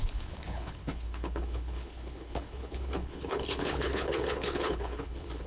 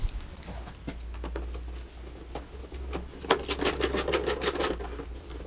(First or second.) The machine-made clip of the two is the first